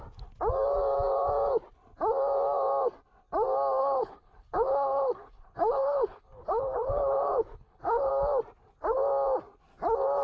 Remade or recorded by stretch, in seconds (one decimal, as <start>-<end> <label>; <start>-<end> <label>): 0.0-3.8 recorded; 3.8-8.1 remade; 8.1-10.2 recorded